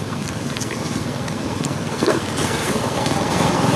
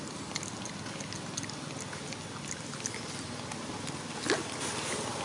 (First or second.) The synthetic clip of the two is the first